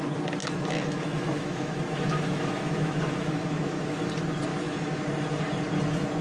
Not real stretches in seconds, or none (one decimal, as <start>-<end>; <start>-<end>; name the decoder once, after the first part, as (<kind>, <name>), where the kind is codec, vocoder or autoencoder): 0.4-4.1 (autoencoder, DAC-VAE); 4.5-5.0